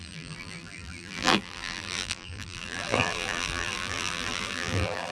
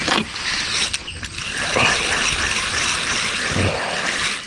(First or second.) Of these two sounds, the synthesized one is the first